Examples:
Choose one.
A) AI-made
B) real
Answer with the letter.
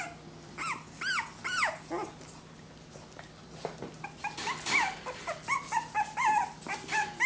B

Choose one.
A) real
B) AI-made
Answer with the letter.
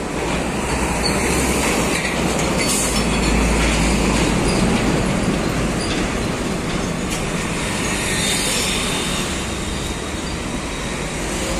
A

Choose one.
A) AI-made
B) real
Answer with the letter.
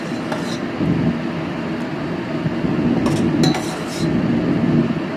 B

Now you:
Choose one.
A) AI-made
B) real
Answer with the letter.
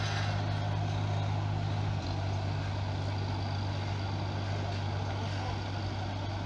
B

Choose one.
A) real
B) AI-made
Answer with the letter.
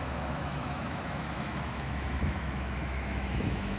B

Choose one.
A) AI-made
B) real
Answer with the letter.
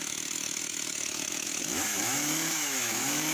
A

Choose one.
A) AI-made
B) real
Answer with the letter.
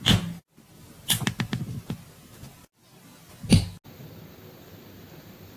B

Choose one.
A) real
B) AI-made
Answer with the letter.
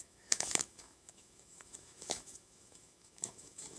B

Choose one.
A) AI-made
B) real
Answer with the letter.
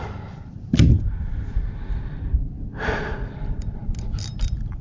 B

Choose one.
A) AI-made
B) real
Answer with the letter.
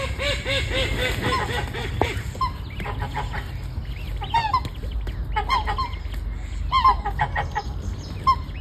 B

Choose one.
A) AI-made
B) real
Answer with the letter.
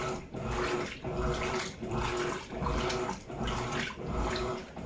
B